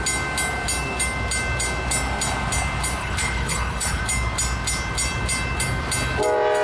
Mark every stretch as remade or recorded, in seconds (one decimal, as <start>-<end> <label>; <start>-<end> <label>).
0.0-3.0 recorded; 3.0-4.0 remade; 4.0-6.6 recorded